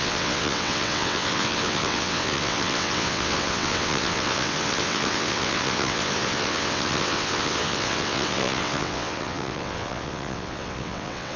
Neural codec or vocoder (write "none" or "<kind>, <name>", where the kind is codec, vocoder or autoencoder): vocoder, WaveNeXt